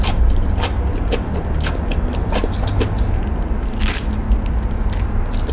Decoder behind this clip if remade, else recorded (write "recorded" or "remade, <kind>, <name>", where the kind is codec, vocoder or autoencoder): recorded